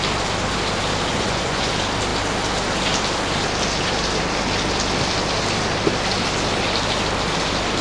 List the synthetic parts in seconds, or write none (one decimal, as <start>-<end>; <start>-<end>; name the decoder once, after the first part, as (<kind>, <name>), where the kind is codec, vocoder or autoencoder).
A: 1.1-1.7 (vocoder, Vocos)